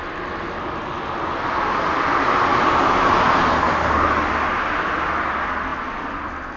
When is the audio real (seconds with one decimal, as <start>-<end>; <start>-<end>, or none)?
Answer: 0.0-6.6